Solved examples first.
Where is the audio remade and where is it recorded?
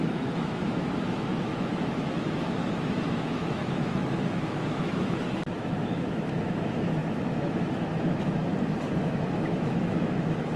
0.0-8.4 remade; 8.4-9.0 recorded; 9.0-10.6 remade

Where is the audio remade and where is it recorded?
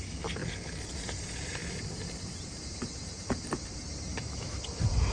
0.0-4.1 recorded; 4.1-4.6 remade; 4.6-5.1 recorded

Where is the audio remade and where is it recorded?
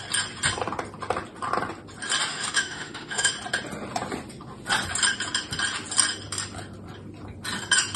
0.0-2.3 recorded; 2.3-3.3 remade; 3.3-8.0 recorded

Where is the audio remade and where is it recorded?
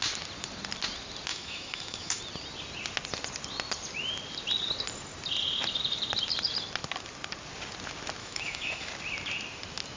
0.0-1.3 recorded; 1.3-2.2 remade; 2.2-8.2 recorded; 8.2-8.9 remade; 8.9-10.0 recorded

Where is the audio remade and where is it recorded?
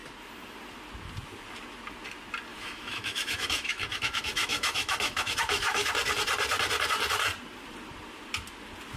0.0-2.5 recorded; 2.5-5.9 remade; 5.9-9.0 recorded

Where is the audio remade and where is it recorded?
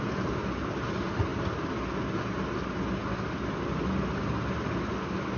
0.0-5.4 recorded